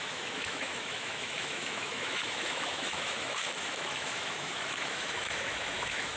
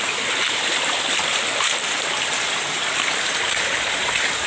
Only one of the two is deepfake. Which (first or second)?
first